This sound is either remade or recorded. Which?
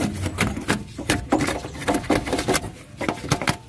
recorded